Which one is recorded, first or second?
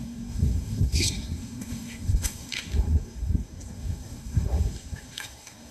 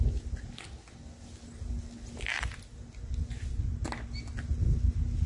second